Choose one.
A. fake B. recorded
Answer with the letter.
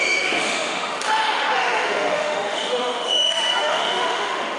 A